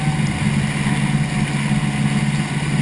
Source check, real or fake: real